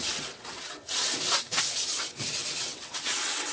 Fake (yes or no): yes